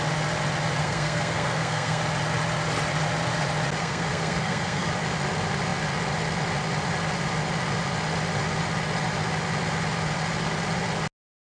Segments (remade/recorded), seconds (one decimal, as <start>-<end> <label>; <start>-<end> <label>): 0.0-0.8 recorded; 0.8-2.0 remade; 2.0-3.8 recorded; 3.8-4.9 remade; 4.9-11.5 recorded